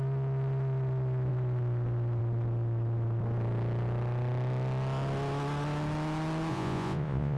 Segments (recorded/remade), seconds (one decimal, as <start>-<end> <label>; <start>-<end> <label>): 0.0-6.5 recorded; 6.5-7.4 remade